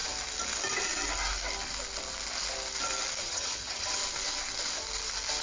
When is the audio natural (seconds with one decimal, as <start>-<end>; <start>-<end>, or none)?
0.0-3.2; 4.0-5.4